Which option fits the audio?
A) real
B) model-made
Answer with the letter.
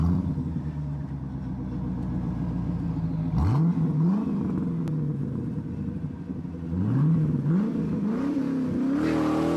A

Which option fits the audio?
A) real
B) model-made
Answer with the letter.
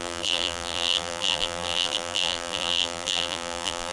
B